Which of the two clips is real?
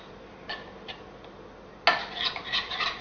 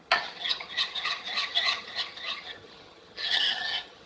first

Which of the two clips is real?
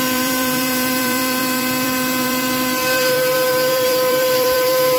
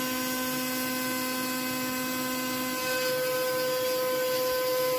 second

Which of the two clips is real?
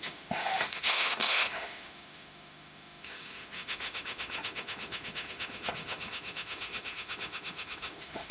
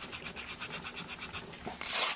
second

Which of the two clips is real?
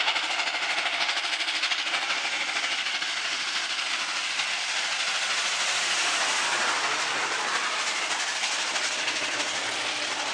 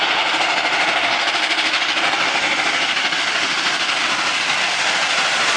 first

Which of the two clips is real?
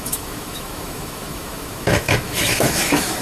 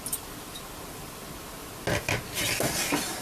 second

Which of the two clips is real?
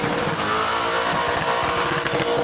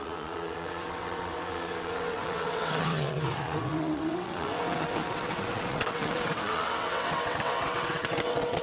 first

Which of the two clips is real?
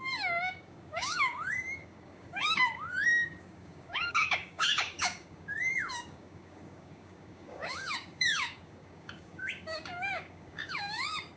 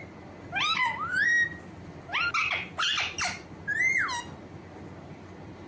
second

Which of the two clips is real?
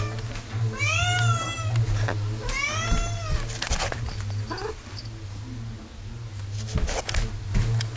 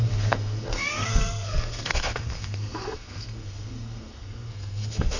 first